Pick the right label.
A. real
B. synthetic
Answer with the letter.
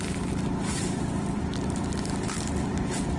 B